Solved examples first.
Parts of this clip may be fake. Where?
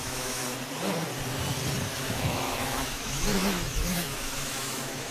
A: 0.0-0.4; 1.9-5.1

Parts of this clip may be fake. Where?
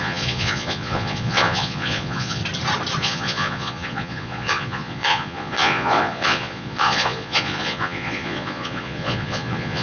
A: 0.0-2.4; 3.0-9.8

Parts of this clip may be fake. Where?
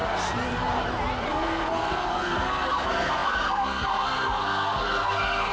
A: 1.3-5.5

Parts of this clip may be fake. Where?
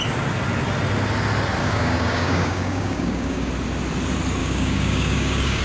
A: 1.6-3.5; 4.4-5.6